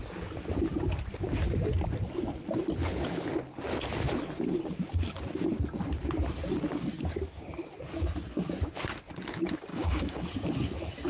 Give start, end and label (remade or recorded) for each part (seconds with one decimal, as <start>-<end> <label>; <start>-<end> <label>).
0.0-9.7 recorded; 9.7-10.2 remade; 10.2-11.1 recorded